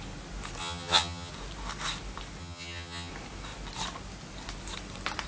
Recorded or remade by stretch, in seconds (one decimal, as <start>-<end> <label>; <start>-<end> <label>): 0.0-0.6 recorded; 0.6-1.3 remade; 1.3-2.4 recorded; 2.4-3.1 remade; 3.1-5.3 recorded